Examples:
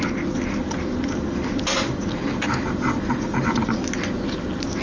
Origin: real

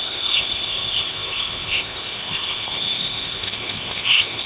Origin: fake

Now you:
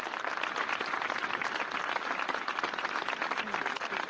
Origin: real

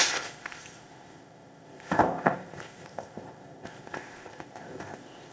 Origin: fake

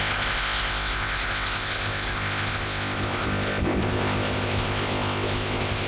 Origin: fake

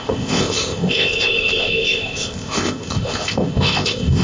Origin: fake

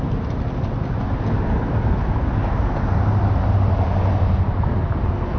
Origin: real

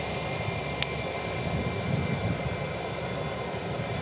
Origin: real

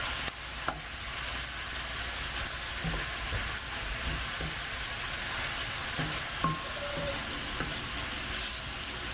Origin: real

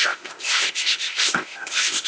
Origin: fake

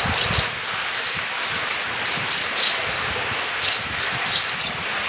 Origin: real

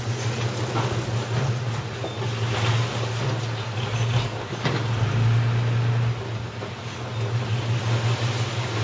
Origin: real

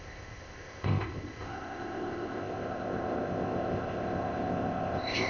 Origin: fake